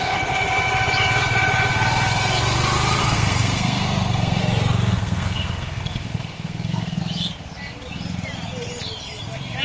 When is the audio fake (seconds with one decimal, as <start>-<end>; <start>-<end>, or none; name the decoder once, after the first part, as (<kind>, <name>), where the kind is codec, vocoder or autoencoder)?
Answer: 3.0-4.4 (codec, SNAC); 4.9-7.0